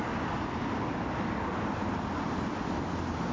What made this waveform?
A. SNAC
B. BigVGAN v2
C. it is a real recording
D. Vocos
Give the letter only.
C